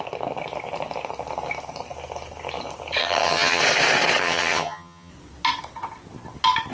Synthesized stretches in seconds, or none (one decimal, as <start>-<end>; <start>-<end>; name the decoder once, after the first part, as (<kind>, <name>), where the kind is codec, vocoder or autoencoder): 3.0-3.6 (vocoder, HiFi-GAN); 4.2-5.1